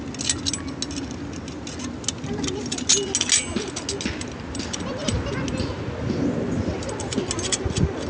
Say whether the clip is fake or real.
real